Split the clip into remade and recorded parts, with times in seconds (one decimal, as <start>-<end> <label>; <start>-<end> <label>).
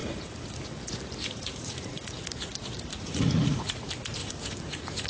0.0-0.7 remade; 0.7-1.2 recorded; 1.2-2.1 remade; 2.1-2.9 recorded; 2.9-3.8 remade; 3.8-4.2 recorded; 4.2-5.1 remade